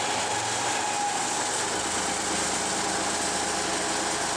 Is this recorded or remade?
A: recorded